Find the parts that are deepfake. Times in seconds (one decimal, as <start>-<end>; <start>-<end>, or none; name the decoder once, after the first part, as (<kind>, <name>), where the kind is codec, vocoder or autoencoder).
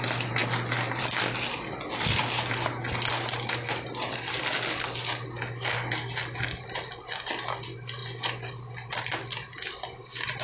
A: none